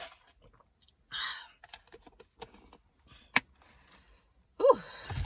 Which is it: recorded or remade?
recorded